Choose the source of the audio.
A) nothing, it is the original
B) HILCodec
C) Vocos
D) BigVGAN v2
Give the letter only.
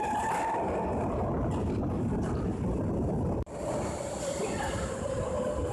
D